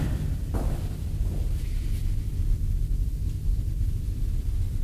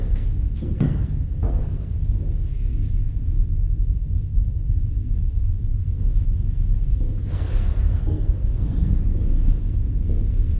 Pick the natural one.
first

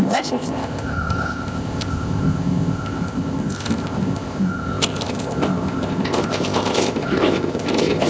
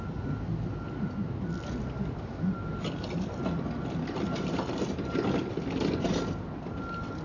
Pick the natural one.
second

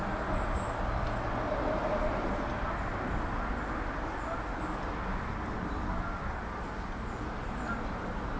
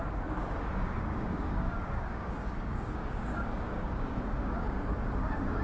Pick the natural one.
first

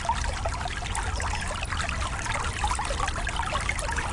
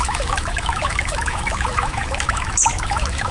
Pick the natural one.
first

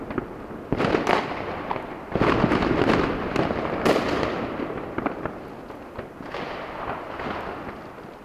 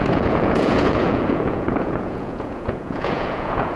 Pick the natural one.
first